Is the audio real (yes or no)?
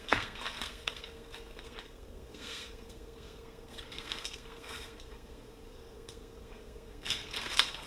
no